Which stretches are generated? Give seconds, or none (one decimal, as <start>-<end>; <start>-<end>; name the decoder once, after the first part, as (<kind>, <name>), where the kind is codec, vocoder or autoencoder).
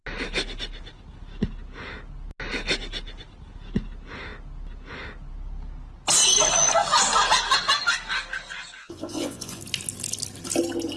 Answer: 8.8-9.6 (vocoder, Vocos)